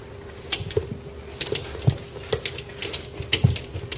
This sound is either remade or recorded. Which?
recorded